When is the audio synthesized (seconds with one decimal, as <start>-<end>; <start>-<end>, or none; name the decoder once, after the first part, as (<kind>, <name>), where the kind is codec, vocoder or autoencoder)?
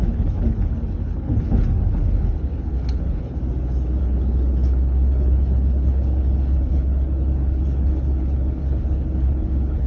0.0-3.4 (codec, HILCodec); 4.0-9.9